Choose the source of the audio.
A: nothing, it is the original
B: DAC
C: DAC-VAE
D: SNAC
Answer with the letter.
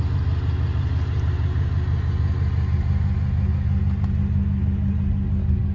A